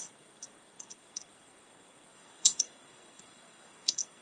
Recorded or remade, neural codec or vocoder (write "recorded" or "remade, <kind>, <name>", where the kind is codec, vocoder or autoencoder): remade, codec, SNAC